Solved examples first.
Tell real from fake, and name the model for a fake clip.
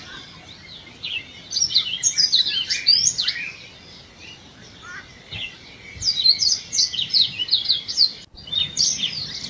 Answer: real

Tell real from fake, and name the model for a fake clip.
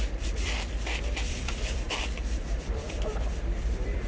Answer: fake, vocoder, BigVGAN v2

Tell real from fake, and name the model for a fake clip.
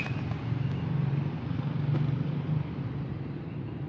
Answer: real